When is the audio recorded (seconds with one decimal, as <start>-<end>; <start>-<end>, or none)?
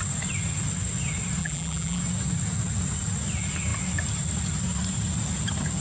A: 0.0-1.4; 2.0-5.8